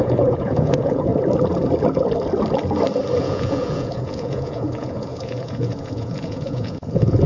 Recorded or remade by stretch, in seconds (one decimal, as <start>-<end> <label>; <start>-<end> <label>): 0.0-1.1 remade; 1.1-3.2 recorded; 3.2-7.3 remade